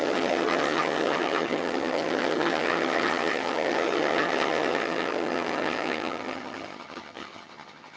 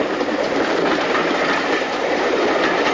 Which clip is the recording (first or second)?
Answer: second